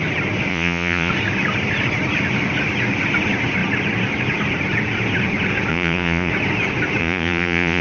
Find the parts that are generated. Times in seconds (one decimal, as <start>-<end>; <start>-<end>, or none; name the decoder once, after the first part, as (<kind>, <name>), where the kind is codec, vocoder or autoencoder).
0.5-1.1 (vocoder, Vocos); 5.7-6.3; 7.0-7.8